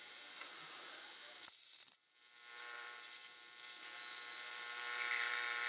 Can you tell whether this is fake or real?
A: fake